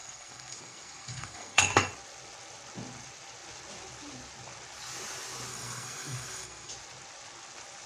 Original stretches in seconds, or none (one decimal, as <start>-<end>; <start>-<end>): 1.9-5.5; 6.7-7.9